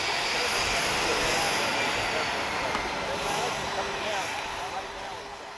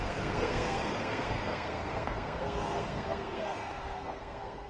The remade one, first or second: second